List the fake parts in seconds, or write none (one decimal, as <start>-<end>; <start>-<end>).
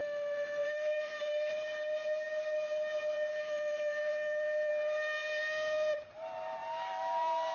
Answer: 0.0-1.5; 3.3-4.7